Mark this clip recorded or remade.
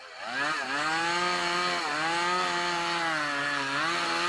recorded